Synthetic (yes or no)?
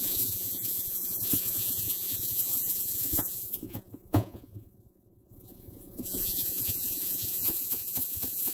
yes